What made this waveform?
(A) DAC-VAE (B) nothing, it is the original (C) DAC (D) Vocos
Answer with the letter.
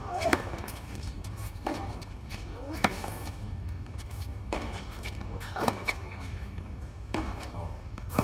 C